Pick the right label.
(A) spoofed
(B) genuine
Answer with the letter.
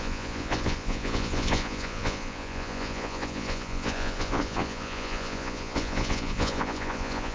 A